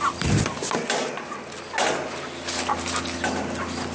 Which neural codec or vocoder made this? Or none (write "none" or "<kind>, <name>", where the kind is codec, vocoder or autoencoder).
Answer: none